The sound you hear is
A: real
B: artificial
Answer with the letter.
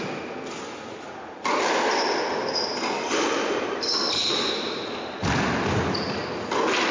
A